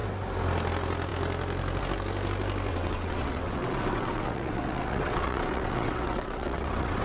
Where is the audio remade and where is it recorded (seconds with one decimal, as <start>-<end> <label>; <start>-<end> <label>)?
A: 0.0-2.7 recorded; 2.7-7.0 remade